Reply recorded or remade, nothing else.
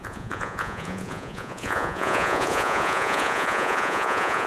remade